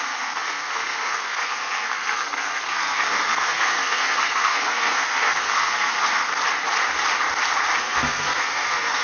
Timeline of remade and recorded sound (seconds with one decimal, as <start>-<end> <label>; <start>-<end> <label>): 0.0-6.3 remade; 6.3-7.8 recorded; 7.8-9.0 remade